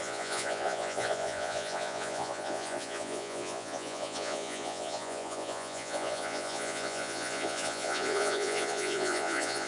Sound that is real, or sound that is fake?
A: fake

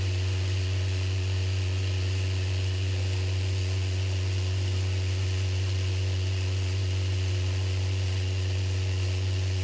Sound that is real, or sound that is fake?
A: fake